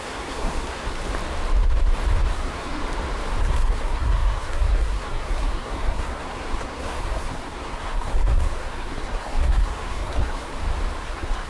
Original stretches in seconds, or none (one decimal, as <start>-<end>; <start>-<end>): 1.0-2.3; 2.8-3.4; 10.5-11.0